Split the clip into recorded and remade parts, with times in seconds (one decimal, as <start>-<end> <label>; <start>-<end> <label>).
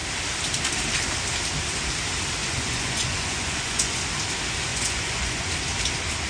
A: 0.0-2.4 recorded; 2.4-4.0 remade; 4.0-4.7 recorded; 4.7-5.5 remade; 5.5-6.3 recorded